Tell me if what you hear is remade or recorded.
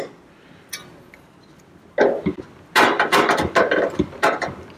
recorded